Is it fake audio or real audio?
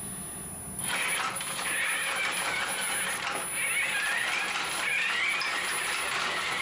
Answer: real